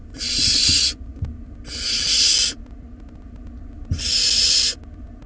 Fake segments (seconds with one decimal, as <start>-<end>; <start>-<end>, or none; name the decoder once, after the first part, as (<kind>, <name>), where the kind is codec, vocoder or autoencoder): none